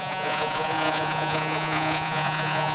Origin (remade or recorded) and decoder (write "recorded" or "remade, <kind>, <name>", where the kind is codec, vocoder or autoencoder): remade, vocoder, Vocos